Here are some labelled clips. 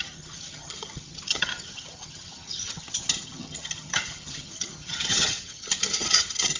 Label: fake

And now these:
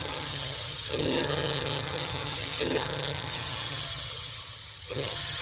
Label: fake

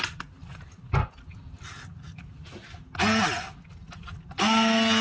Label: real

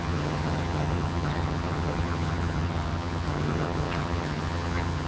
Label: fake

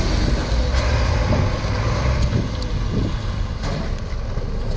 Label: real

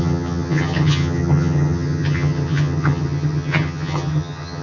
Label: fake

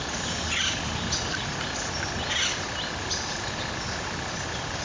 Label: real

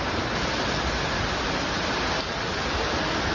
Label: real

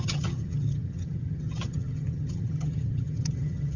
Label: fake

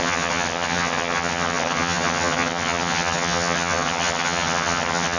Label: fake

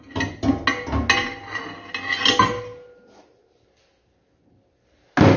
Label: real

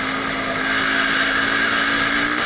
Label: real